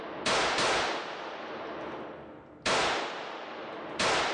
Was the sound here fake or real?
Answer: real